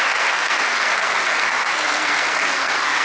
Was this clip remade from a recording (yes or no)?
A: yes